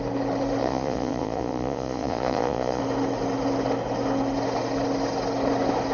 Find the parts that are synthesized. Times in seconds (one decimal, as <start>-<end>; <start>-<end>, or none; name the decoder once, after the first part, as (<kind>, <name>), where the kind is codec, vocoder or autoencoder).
0.6-2.8 (vocoder, Vocos)